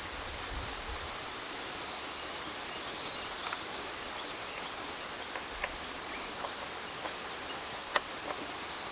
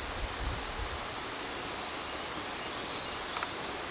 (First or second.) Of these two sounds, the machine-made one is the first